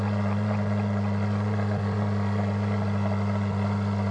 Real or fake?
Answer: real